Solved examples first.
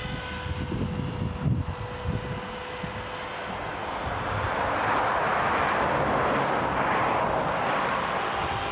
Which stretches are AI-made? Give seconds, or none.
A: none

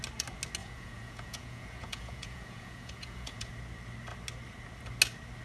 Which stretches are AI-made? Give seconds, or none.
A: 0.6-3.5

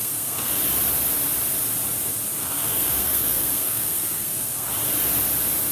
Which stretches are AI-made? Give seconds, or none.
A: 0.0-0.6; 2.4-4.7